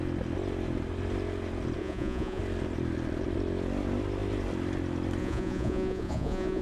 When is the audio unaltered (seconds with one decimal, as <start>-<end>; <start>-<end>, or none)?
0.0-1.8; 2.4-5.2